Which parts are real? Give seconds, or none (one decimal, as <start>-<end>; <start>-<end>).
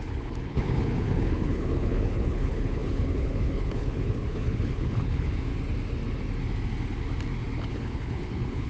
5.5-7.7